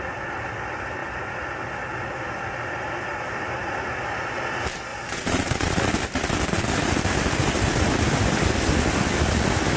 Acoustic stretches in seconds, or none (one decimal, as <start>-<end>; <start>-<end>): 0.0-4.9; 5.9-9.8